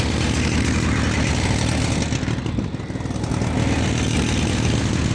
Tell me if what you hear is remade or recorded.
recorded